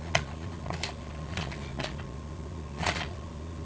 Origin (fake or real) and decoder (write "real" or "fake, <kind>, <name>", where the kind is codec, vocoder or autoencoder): fake, vocoder, Vocos